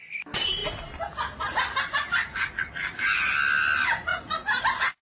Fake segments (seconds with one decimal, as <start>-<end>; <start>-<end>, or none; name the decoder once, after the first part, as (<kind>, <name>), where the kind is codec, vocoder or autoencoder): none